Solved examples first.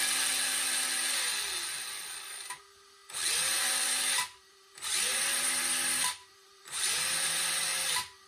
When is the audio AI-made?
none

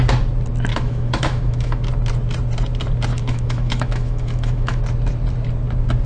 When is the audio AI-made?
0.7-1.9 (autoencoder, DAC-VAE); 3.1-4.8

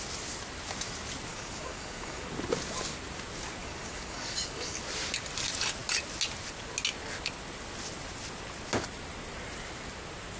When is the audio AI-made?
1.3-2.3 (codec, DAC); 3.6-4.8